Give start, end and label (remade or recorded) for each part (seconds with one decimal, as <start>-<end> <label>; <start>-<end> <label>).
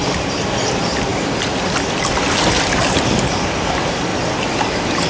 0.0-5.1 recorded